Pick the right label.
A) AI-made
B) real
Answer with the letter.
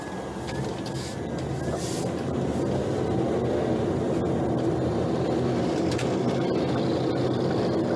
B